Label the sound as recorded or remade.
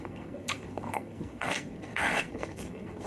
remade